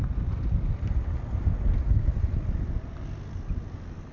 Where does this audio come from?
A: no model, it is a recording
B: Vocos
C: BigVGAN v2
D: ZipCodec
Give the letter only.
A